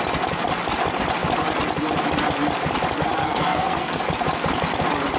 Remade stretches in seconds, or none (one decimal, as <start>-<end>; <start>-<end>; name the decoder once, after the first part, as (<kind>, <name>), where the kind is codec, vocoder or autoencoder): 3.2-4.0 (codec, SNAC)